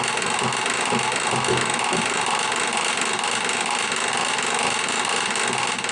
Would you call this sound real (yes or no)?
yes